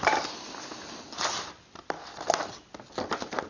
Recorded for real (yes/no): yes